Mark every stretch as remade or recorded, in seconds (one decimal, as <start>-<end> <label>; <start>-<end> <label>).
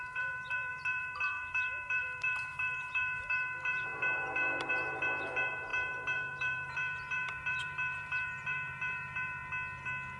0.0-9.4 remade; 9.4-10.2 recorded